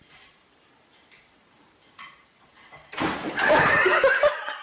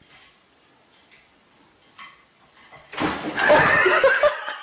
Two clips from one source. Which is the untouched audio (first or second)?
second